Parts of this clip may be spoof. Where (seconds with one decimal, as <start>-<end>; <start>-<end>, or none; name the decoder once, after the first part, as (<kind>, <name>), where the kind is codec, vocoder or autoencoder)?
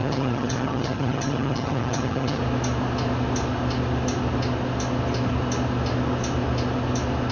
0.0-2.4 (vocoder, HiFi-GAN)